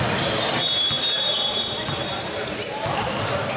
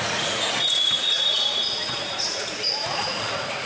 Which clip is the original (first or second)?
first